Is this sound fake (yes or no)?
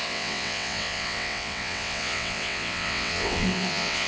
yes